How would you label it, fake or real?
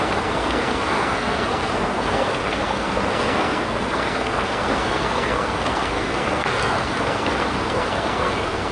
fake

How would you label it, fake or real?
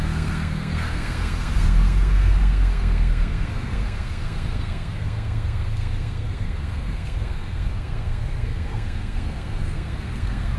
fake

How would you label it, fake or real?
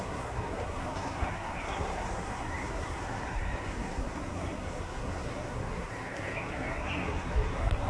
fake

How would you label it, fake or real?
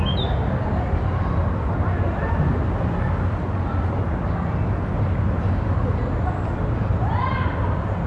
real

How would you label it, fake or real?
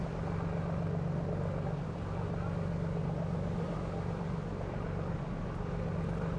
real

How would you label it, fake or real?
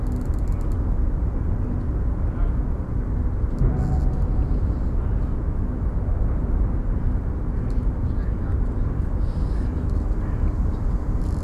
real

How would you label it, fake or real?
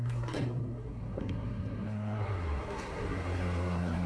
fake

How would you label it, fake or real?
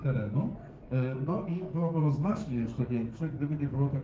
fake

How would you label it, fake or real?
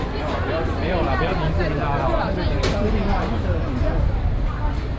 real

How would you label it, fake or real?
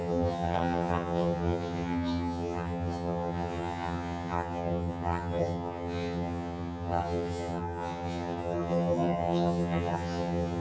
fake